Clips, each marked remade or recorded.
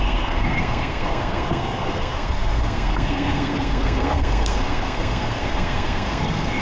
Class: remade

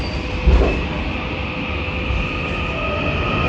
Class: recorded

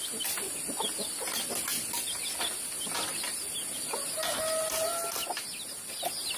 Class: recorded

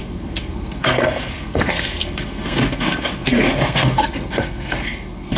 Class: remade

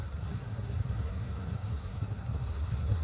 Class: remade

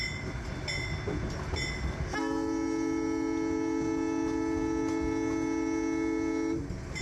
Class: recorded